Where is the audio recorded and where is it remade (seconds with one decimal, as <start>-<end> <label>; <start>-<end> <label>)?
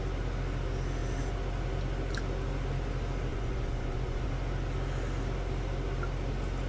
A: 0.0-3.3 recorded; 3.3-4.3 remade; 4.3-6.7 recorded